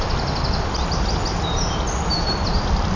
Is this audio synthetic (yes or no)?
no